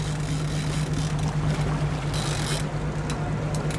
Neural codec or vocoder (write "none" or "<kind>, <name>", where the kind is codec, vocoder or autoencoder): none